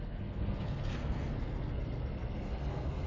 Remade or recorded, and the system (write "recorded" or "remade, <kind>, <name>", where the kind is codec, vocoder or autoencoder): remade, codec, SNAC